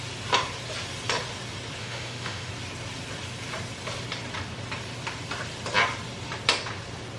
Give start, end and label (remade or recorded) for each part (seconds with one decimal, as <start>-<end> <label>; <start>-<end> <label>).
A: 0.0-1.8 recorded; 1.8-2.5 remade; 2.5-7.2 recorded